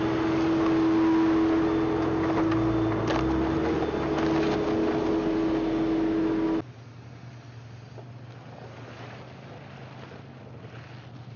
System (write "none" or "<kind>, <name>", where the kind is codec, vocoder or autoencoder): none